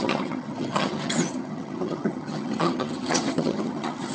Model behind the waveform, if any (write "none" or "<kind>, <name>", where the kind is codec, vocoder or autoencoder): vocoder, HiFi-GAN